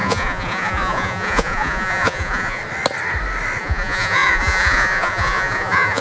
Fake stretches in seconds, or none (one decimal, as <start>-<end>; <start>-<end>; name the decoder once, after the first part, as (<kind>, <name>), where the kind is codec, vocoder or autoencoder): 0.0-2.6 (vocoder, Vocos); 3.6-6.0